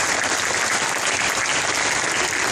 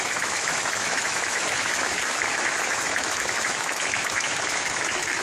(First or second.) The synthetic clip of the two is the second